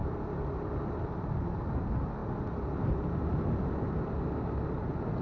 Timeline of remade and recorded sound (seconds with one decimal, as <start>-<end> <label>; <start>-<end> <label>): 0.0-5.2 recorded